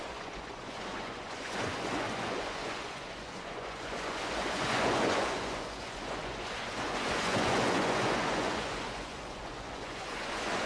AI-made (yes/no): yes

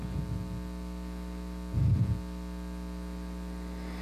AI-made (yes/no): no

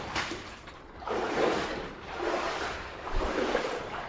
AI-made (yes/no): yes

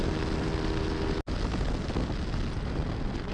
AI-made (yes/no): no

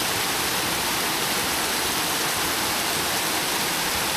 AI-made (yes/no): no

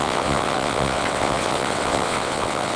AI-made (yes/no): yes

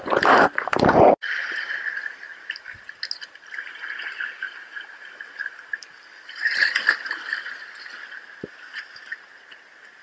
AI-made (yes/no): no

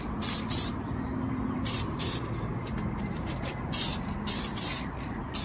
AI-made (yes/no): yes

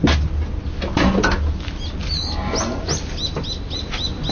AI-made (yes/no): no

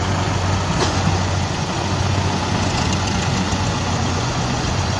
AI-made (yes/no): yes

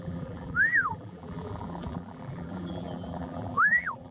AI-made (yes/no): yes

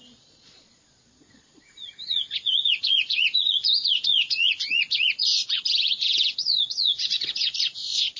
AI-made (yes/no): yes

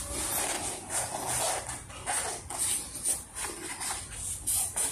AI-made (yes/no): no